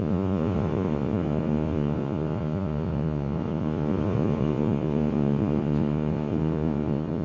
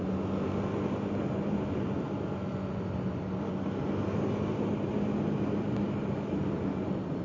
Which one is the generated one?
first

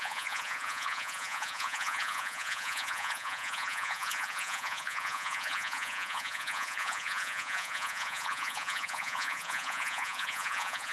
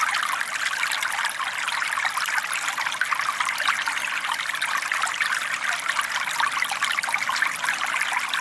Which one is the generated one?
first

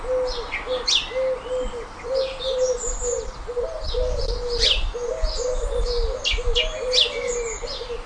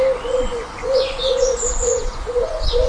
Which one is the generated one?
second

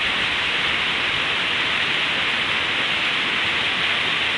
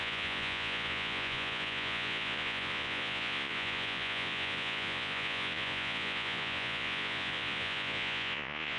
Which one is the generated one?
second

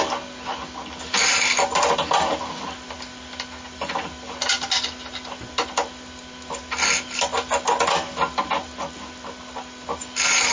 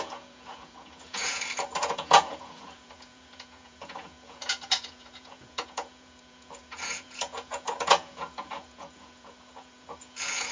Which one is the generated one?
second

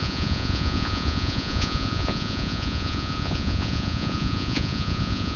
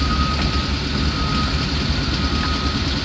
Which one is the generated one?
first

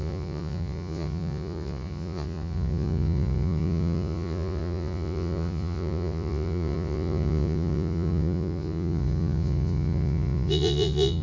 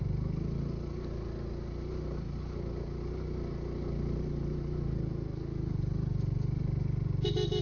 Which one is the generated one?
first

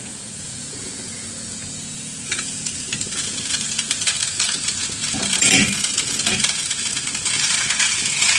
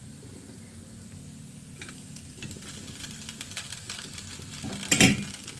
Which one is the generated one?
first